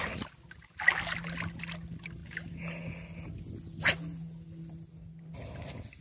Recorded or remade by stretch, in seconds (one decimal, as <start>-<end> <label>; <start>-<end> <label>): 0.0-6.0 recorded